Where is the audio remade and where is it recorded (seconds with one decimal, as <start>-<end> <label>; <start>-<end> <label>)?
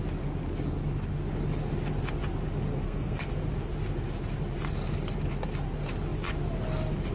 0.0-2.7 recorded; 2.7-3.3 remade; 3.3-7.1 recorded